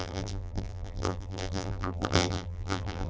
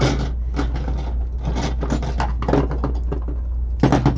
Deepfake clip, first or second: first